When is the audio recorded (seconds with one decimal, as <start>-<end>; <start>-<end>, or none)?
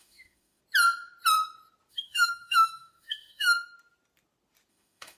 0.6-1.9; 3.5-4.7